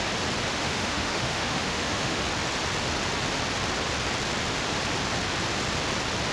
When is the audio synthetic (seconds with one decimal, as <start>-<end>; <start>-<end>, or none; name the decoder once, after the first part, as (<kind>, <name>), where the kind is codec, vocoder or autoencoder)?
0.6-2.2 (autoencoder, DAC-VAE)